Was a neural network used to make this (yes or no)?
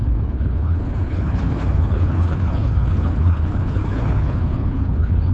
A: yes